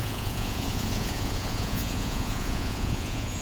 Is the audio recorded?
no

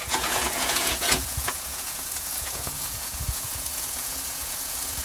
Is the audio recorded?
no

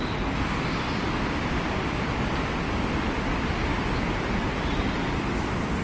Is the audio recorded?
yes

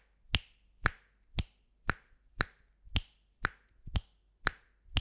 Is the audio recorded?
yes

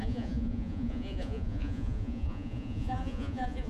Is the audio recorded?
no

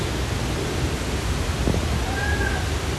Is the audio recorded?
yes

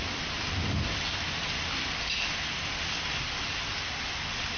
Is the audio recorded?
yes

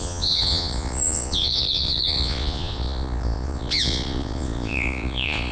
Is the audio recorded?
no